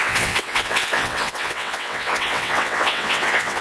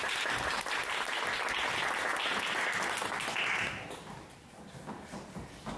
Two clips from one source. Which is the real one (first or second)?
second